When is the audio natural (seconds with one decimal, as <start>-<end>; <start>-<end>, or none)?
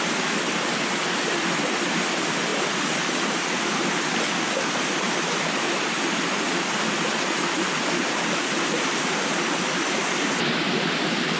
none